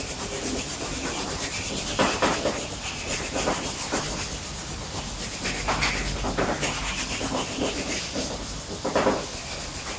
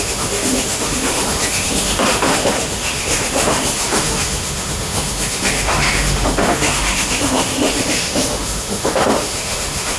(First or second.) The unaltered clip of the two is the first